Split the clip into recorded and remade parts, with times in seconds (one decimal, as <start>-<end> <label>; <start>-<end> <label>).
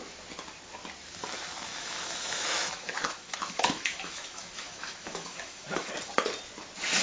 0.0-1.7 recorded; 1.7-5.9 remade; 5.9-7.0 recorded